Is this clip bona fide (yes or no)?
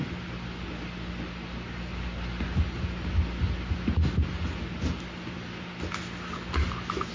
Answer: yes